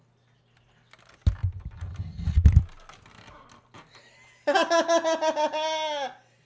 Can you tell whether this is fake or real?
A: real